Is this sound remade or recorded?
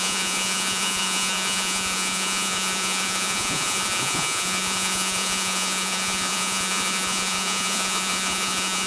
remade